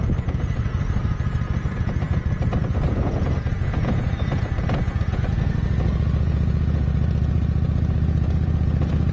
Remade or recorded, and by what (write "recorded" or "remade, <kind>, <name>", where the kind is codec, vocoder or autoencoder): remade, vocoder, Vocos